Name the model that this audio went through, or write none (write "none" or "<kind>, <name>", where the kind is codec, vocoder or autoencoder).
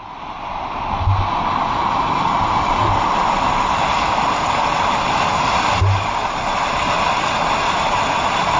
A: none